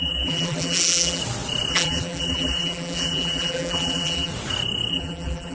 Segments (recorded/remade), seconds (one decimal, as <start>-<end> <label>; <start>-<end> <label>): 0.0-1.2 remade; 1.2-1.7 recorded; 1.7-4.3 remade; 4.3-4.9 recorded; 4.9-5.5 remade